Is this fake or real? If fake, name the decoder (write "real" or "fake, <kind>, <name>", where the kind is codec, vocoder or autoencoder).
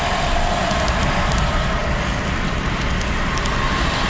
real